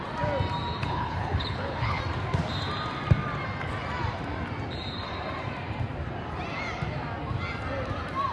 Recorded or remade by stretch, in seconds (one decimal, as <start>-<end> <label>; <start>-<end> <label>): 0.0-0.8 recorded; 0.8-2.0 remade; 2.0-8.3 recorded